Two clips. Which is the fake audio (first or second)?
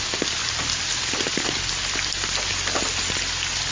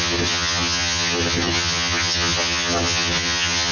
second